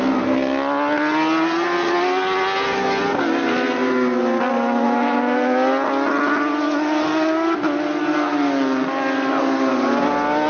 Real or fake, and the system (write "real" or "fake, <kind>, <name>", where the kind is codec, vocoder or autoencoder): real